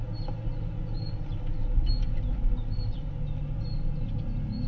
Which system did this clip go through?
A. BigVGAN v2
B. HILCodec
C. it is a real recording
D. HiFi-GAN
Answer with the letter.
C